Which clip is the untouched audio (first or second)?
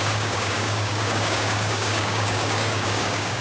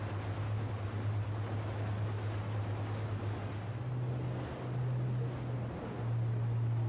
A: second